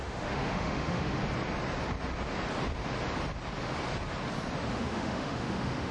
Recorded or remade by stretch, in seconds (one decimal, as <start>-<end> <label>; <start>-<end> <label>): 0.0-1.2 remade; 1.2-4.7 recorded; 4.7-5.9 remade